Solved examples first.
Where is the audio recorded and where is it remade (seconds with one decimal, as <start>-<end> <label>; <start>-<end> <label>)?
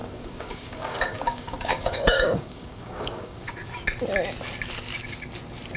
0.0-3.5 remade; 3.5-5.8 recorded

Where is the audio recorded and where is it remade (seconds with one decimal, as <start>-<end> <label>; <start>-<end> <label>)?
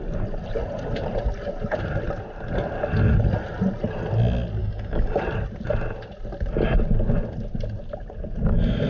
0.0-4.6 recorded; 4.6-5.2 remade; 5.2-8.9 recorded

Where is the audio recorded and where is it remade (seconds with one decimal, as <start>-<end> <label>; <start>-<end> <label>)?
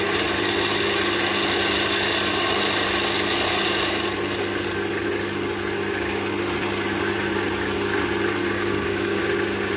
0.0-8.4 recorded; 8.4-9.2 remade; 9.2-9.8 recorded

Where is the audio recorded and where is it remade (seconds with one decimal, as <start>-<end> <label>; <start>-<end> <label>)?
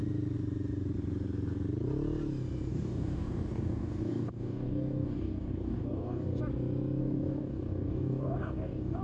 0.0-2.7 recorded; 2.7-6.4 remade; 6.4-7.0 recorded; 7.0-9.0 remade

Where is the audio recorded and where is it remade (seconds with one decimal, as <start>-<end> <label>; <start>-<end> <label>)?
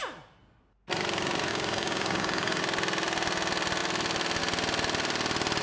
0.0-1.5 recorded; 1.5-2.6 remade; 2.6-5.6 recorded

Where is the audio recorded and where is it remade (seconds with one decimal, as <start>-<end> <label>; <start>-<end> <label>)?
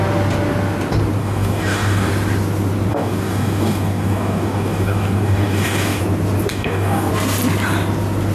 0.0-1.2 recorded; 1.2-2.1 remade; 2.1-2.9 recorded; 2.9-6.0 remade; 6.0-6.5 recorded; 6.5-7.1 remade; 7.1-8.3 recorded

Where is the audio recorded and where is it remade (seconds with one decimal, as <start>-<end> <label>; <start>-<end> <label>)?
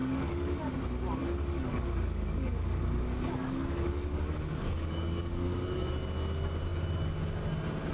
0.0-0.6 remade; 0.6-1.2 recorded; 1.2-5.9 remade; 5.9-7.9 recorded